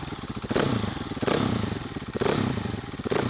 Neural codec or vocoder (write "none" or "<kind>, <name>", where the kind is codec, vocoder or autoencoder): vocoder, BigVGAN v2